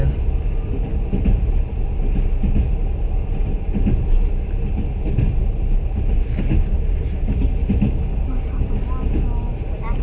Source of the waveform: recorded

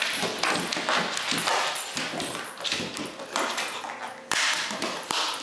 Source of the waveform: recorded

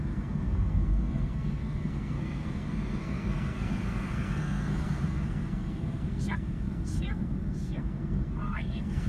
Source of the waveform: remade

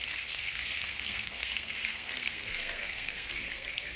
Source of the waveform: remade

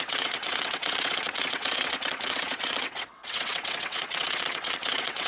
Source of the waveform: remade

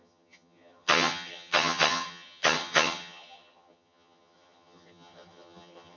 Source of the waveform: remade